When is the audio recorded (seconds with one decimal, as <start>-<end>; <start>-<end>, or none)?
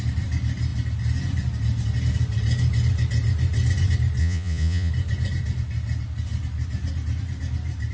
0.0-4.2; 4.9-7.9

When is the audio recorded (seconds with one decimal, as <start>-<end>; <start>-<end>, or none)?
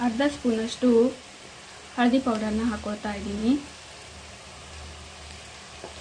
0.0-6.0